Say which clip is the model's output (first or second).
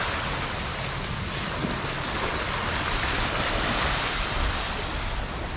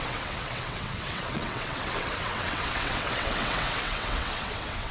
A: second